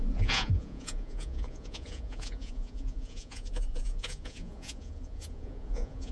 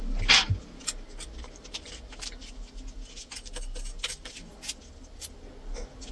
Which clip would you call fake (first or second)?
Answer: first